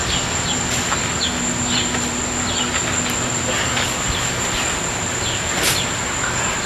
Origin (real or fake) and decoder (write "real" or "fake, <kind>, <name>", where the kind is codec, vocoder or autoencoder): real